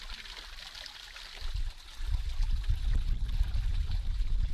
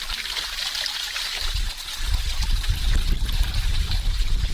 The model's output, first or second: second